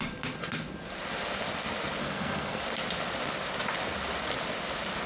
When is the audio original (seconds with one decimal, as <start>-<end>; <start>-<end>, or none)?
0.0-2.0; 2.6-5.1